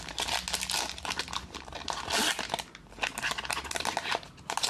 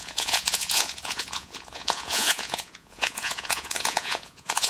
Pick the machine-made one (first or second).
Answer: second